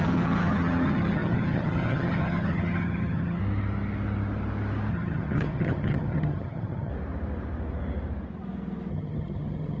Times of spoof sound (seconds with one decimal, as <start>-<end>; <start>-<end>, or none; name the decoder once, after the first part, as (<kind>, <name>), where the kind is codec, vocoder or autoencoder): 0.0-3.4 (vocoder, HiFi-GAN); 4.9-6.9; 8.9-9.8